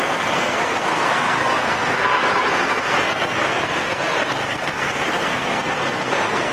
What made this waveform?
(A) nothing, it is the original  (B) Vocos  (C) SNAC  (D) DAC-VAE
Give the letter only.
C